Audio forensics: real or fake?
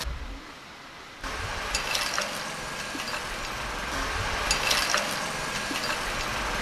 real